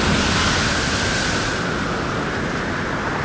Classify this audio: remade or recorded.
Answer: recorded